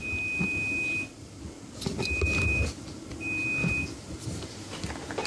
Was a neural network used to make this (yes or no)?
no